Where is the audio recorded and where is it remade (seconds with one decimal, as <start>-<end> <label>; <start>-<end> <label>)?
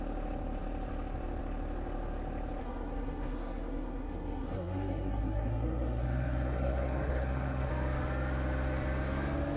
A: 0.0-2.6 recorded; 2.6-7.7 remade; 7.7-9.6 recorded